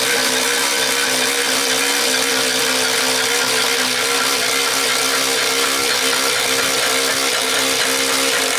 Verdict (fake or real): real